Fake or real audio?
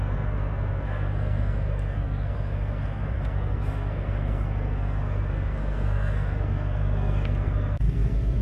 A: fake